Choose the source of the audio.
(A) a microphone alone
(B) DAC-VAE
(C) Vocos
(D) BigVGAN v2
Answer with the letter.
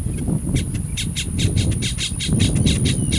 A